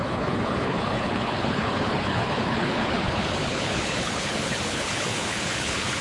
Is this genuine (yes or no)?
no